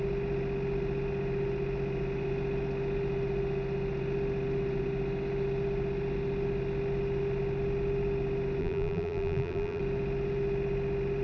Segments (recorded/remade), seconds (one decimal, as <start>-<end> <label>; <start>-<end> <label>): 0.0-8.6 recorded; 8.6-9.8 remade; 9.8-11.2 recorded